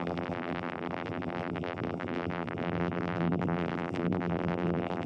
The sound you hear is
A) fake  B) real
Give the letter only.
A